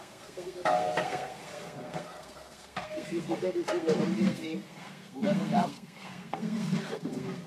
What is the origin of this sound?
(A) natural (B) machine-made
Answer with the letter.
B